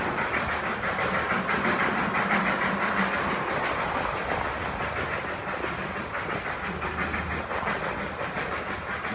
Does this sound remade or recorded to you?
recorded